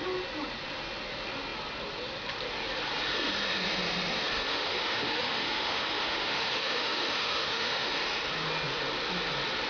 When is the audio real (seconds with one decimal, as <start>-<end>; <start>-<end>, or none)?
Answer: 0.0-4.5; 7.9-9.7